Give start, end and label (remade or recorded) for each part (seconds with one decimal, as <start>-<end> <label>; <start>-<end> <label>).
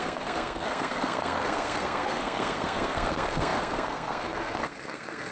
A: 0.0-5.3 remade